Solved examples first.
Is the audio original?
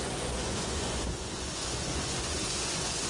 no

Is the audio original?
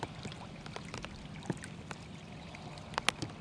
yes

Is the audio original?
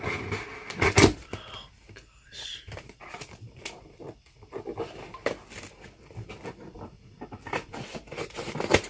yes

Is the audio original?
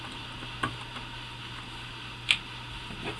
yes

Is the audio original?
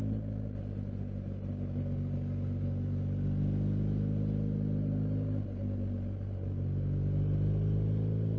yes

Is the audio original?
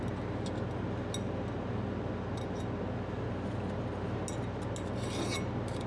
yes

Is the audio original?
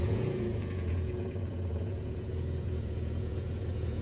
no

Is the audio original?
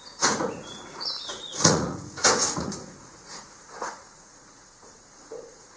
no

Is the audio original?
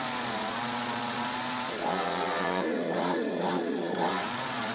no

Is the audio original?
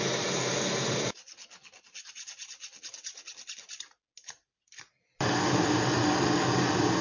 yes